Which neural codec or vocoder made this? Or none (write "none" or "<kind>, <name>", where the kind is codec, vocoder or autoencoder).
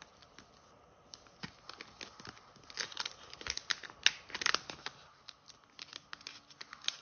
none